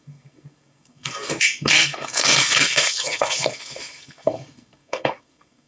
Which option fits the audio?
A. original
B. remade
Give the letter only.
B